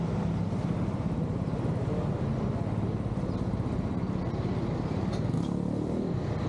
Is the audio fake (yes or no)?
no